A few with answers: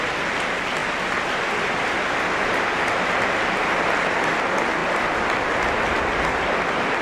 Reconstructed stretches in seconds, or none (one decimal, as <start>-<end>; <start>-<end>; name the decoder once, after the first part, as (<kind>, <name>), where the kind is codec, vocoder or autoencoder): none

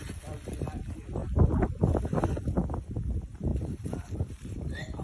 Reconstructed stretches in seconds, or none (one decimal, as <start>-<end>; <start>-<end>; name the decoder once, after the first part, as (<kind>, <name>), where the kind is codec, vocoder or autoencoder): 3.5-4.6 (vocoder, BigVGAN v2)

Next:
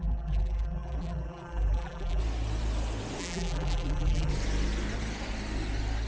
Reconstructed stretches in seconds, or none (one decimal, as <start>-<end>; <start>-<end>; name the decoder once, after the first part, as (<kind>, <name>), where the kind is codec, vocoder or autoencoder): 0.0-2.2 (vocoder, BigVGAN v2); 3.2-4.3

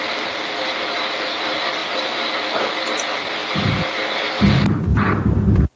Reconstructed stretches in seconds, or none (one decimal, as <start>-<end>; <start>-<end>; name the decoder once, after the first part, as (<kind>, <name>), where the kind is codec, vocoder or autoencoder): none

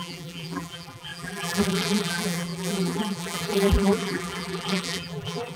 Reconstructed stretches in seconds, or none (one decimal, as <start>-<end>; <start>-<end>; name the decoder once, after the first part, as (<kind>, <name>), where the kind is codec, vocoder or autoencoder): 0.0-5.6 (vocoder, BigVGAN v2)